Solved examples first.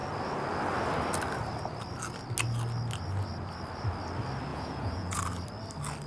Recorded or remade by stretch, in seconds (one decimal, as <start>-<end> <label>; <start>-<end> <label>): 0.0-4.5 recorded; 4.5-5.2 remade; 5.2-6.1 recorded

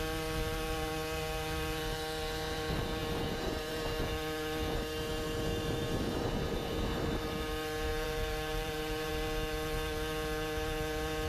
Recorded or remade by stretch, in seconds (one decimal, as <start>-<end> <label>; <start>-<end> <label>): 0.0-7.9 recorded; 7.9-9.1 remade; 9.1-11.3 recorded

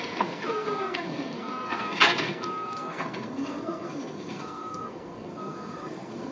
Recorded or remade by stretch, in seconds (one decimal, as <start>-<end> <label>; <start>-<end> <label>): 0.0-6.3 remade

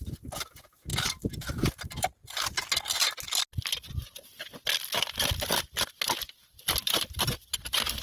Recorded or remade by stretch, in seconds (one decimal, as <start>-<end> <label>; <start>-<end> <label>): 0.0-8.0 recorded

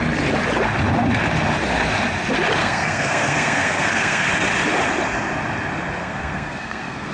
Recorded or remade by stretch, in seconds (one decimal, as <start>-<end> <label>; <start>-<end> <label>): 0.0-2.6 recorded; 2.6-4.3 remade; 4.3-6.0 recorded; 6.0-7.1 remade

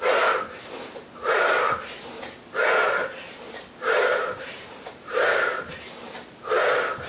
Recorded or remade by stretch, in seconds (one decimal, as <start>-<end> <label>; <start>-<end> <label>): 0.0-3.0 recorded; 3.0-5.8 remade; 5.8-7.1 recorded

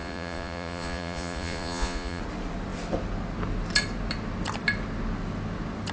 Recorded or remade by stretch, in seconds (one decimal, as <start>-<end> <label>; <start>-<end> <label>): 0.0-2.2 remade; 2.2-5.9 recorded

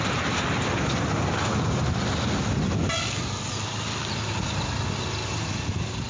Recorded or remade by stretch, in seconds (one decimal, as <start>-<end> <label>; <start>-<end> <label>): 0.0-6.1 recorded